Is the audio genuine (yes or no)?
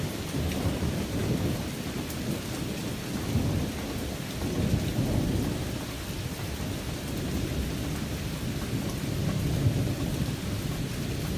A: yes